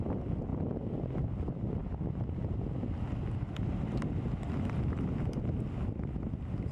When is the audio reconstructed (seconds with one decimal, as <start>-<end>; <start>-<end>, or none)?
none